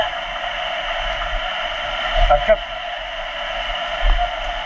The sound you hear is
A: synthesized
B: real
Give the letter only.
B